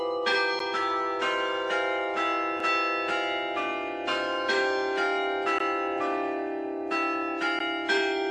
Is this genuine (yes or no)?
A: yes